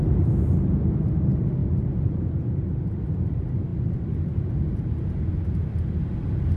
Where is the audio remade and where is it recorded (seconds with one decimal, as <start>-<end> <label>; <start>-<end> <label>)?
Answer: 0.0-1.6 recorded; 1.6-2.3 remade; 2.3-6.6 recorded